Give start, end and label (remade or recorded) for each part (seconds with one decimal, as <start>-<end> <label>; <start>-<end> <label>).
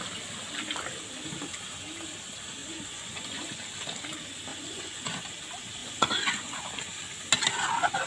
0.0-2.6 recorded; 2.6-3.6 remade; 3.6-4.5 recorded; 4.5-5.2 remade; 5.2-5.8 recorded; 5.8-6.6 remade; 6.6-8.1 recorded